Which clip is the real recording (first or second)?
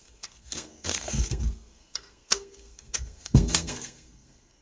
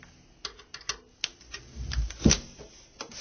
second